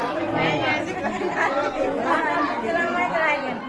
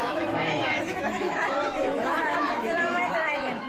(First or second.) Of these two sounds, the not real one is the second